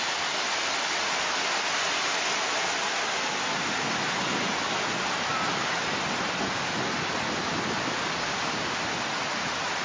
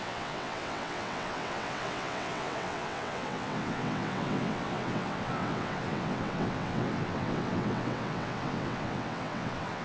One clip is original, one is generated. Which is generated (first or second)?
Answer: second